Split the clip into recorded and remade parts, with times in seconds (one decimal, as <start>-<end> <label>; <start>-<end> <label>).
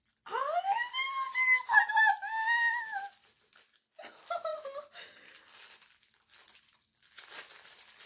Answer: 0.0-8.1 recorded